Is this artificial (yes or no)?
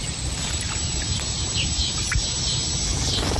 yes